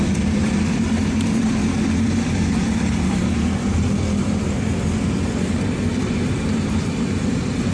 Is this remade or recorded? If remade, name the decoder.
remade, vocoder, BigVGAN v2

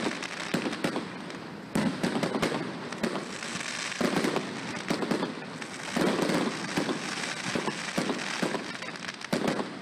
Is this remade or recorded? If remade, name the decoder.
recorded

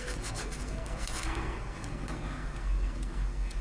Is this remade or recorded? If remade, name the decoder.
remade, codec, SNAC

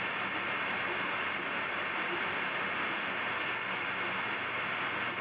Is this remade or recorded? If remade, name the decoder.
recorded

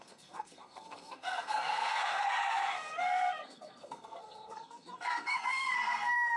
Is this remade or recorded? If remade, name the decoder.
remade, codec, SNAC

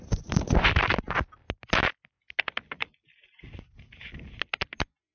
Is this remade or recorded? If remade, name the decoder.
recorded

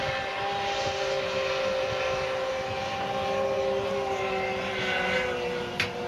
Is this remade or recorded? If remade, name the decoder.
recorded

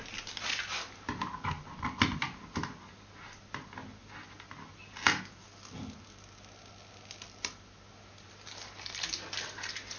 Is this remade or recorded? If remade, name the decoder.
recorded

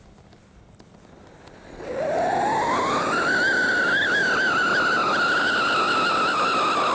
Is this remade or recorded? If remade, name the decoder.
recorded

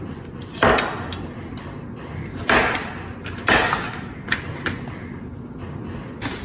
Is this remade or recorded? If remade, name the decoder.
recorded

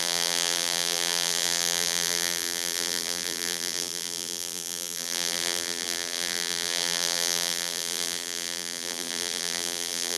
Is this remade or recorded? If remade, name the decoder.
remade, vocoder, BigVGAN v2